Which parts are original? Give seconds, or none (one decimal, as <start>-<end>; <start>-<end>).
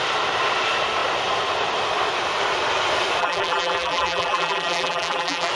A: 0.0-3.2